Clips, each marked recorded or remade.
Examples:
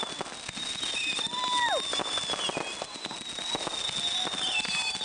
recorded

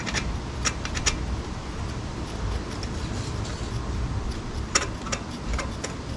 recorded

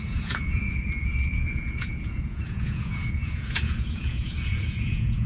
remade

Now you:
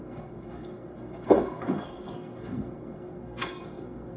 remade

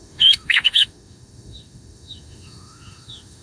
remade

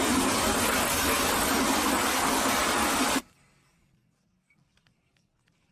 recorded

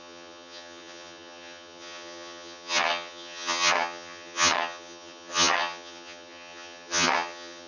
remade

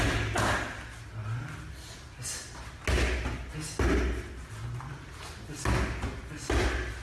recorded